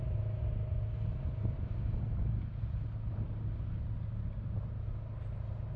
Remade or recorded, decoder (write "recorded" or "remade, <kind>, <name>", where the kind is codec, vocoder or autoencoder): recorded